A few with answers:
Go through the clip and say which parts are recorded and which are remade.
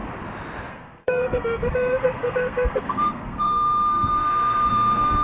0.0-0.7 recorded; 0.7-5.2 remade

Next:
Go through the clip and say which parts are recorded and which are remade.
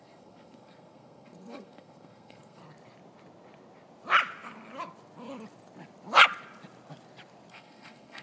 0.0-2.6 remade; 2.6-7.5 recorded; 7.5-8.2 remade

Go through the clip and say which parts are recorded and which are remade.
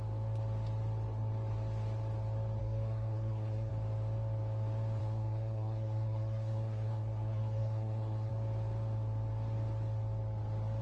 0.0-2.6 recorded; 2.6-3.7 remade; 3.7-5.0 recorded; 5.0-8.3 remade; 8.3-10.8 recorded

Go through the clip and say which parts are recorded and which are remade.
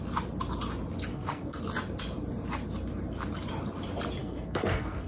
0.0-1.1 recorded; 1.1-1.6 remade; 1.6-4.2 recorded; 4.2-5.1 remade